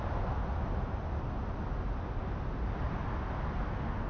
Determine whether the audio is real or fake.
real